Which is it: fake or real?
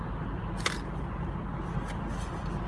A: real